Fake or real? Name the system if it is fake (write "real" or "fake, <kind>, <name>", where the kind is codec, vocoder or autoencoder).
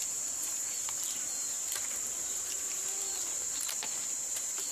fake, vocoder, BigVGAN v2